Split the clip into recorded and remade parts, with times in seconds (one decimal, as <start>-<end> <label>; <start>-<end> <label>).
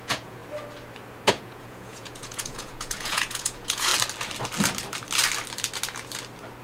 0.0-0.4 remade; 0.4-1.3 recorded; 1.3-3.9 remade; 3.9-6.6 recorded